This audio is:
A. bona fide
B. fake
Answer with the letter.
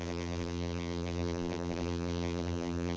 B